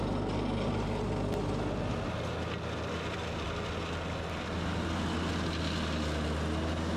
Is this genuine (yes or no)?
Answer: yes